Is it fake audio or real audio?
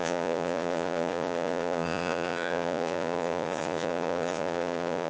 fake